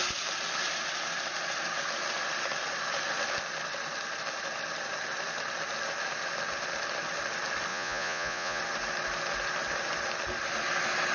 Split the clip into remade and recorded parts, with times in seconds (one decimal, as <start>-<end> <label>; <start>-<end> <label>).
0.0-7.7 recorded; 7.7-8.6 remade; 8.6-11.1 recorded